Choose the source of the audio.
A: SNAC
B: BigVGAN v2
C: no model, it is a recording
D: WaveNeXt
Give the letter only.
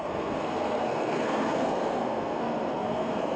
A